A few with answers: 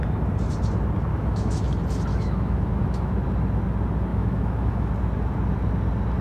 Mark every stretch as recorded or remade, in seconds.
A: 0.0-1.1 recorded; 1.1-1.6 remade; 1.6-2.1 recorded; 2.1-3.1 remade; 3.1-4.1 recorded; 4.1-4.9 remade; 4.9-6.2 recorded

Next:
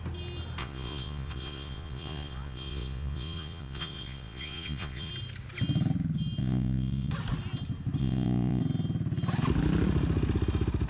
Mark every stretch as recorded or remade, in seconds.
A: 0.0-0.6 recorded; 0.6-5.1 remade; 5.1-6.4 recorded; 6.4-7.1 remade; 7.1-8.0 recorded; 8.0-8.6 remade; 8.6-10.9 recorded